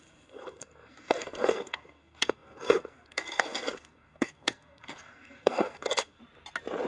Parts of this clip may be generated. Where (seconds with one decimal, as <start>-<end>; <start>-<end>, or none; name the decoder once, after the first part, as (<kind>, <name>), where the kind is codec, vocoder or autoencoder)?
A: 0.0-6.2 (codec, SNAC)